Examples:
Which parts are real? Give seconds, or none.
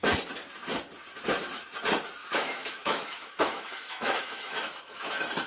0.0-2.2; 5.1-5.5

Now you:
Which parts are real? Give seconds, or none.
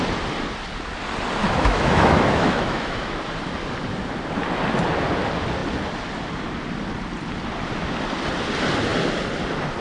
0.0-1.4; 3.1-9.8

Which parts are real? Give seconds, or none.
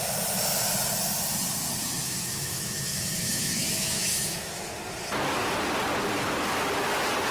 0.0-1.8; 4.7-7.3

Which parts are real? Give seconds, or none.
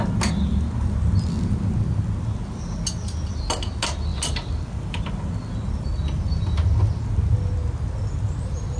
0.0-8.8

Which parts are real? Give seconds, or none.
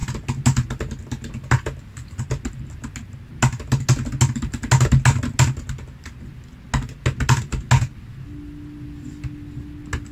0.0-10.1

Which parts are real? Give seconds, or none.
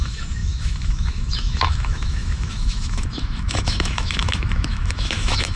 none